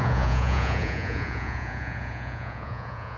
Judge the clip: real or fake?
fake